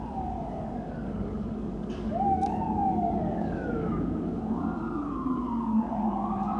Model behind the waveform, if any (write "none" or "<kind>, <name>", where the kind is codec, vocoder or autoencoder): codec, DAC